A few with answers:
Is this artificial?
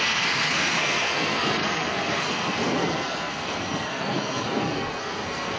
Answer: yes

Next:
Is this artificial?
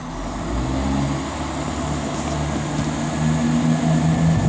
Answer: no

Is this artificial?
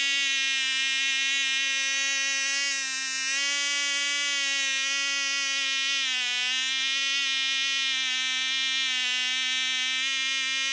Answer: no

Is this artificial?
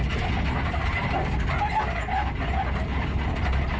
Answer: no